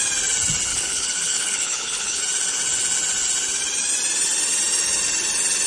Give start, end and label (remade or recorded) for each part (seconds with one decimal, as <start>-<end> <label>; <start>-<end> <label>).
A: 0.0-0.7 recorded; 0.7-2.2 remade; 2.2-5.7 recorded